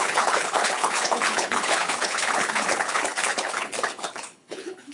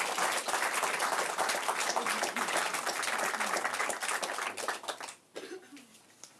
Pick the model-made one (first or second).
first